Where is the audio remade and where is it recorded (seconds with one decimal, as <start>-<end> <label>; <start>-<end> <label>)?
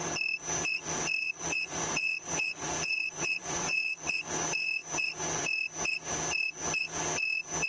0.0-1.2 recorded; 1.2-4.2 remade; 4.2-7.7 recorded